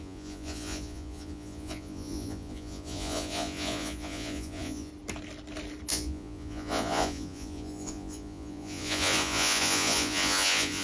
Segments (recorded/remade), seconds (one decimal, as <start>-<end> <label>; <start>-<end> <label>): 0.0-4.9 remade; 4.9-5.9 recorded; 5.9-10.8 remade